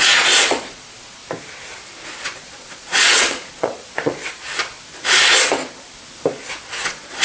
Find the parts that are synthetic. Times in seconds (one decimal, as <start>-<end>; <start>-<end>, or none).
0.0-1.2; 2.2-4.4; 6.8-7.2